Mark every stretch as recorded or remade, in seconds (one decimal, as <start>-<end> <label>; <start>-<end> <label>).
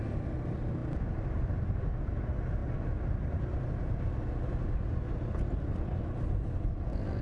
0.0-7.2 recorded